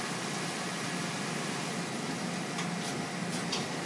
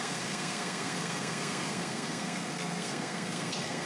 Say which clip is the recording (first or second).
first